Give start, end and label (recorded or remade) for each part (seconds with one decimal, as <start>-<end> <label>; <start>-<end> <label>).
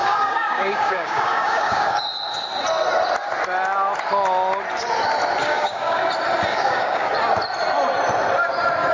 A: 0.0-2.0 remade; 2.0-5.4 recorded; 5.4-6.0 remade; 6.0-6.5 recorded; 6.5-7.1 remade; 7.1-8.9 recorded